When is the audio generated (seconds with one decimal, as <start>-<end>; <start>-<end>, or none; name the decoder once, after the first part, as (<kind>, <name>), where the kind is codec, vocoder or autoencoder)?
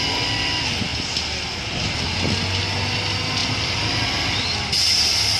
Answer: 0.9-1.6 (vocoder, BigVGAN v2); 3.4-5.4